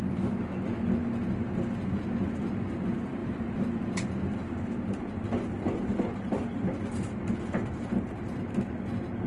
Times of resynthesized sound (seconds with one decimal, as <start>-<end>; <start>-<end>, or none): 1.0-2.0; 3.2-8.4